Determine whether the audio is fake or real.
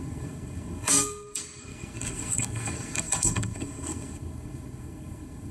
fake